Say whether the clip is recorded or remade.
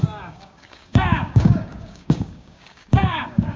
remade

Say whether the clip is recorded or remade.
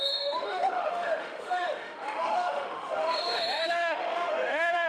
remade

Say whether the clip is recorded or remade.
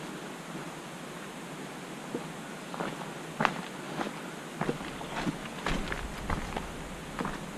recorded